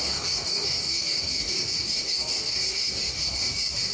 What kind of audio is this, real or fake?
fake